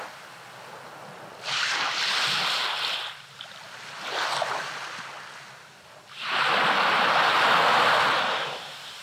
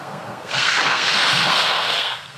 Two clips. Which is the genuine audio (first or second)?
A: first